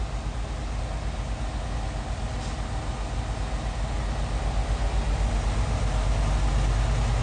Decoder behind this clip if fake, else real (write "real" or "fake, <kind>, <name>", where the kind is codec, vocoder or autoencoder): real